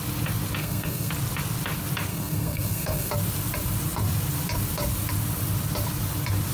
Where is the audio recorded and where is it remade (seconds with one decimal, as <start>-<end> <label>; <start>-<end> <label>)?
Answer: 0.0-0.6 recorded; 0.6-1.1 remade; 1.1-2.1 recorded; 2.1-3.1 remade; 3.1-6.5 recorded